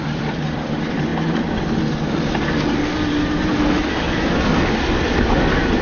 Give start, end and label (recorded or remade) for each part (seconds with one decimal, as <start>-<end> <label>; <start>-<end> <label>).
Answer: 0.0-1.1 remade; 1.1-3.4 recorded; 3.4-3.8 remade; 3.8-4.5 recorded; 4.5-5.8 remade